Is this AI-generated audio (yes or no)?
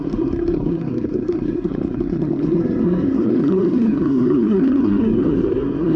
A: yes